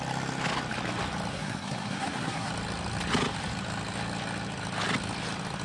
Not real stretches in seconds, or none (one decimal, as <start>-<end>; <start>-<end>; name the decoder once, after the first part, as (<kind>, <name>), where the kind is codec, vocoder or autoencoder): 1.3-2.5 (codec, SNAC)